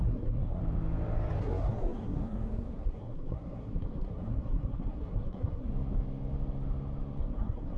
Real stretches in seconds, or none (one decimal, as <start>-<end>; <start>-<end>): 0.6-1.4; 5.7-7.2